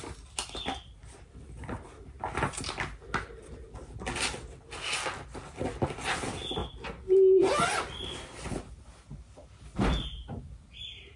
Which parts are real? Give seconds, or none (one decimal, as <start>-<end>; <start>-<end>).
0.0-11.2